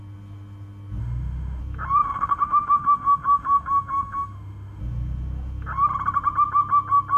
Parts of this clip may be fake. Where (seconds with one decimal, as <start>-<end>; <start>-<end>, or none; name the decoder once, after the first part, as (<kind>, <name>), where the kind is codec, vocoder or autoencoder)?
1.0-1.6 (autoencoder, DAC-VAE); 2.0-4.8